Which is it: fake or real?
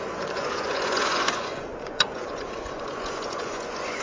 fake